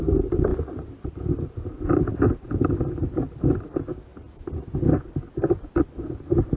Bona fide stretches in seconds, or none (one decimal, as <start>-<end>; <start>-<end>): 0.0-6.6

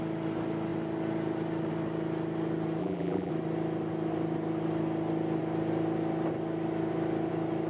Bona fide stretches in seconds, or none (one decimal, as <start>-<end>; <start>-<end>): 0.0-2.8; 3.3-7.7

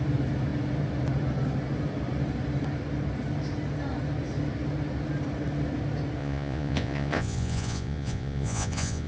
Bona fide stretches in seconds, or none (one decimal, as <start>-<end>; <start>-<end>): 0.0-6.2

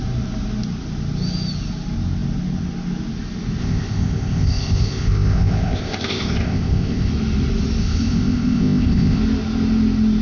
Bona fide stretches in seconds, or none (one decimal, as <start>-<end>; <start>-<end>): 0.0-3.6; 7.1-7.8; 9.2-10.2